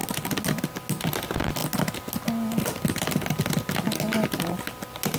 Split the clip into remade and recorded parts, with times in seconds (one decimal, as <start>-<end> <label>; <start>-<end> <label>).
0.0-5.2 recorded